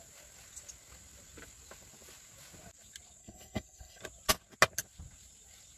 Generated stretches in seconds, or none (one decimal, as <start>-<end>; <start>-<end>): 3.2-4.0